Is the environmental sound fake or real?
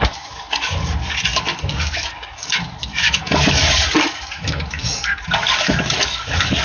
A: fake